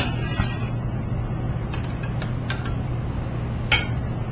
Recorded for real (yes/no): yes